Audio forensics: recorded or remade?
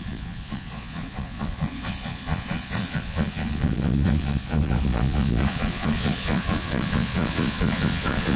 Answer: remade